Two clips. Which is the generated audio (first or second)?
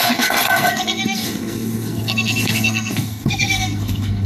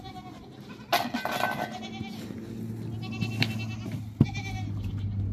first